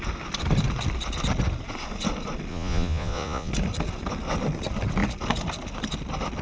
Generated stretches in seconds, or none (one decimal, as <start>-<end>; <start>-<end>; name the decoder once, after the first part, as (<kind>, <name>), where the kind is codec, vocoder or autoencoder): 2.5-3.5 (vocoder, Vocos)